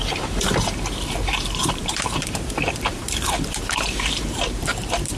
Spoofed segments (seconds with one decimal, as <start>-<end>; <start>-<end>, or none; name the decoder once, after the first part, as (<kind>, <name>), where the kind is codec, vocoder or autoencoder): 0.0-5.2 (vocoder, BigVGAN v2)